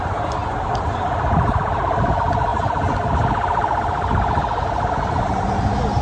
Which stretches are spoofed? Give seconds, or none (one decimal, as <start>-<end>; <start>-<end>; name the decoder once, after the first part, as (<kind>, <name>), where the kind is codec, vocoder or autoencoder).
none

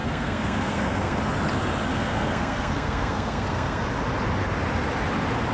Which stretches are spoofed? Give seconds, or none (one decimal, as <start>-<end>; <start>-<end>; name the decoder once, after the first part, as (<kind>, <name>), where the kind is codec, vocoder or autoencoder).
0.0-1.2 (codec, SNAC); 1.9-3.8

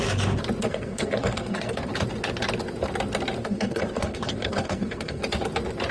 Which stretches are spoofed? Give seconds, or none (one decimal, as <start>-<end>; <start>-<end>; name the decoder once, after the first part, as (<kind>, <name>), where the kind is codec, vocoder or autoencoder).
0.6-1.9 (codec, SNAC); 3.4-5.2